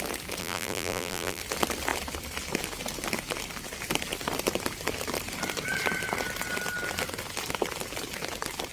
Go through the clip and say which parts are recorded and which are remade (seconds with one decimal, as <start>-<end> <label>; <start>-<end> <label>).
0.0-0.4 recorded; 0.4-1.4 remade; 1.4-8.7 recorded